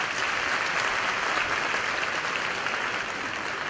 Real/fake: real